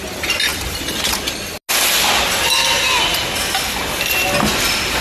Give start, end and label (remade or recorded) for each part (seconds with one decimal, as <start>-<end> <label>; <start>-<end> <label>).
0.0-0.5 recorded; 0.5-1.5 remade; 1.5-5.0 recorded